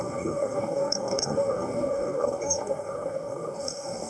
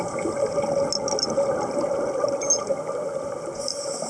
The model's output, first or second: first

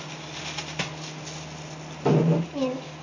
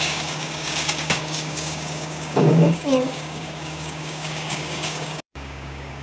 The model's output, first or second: second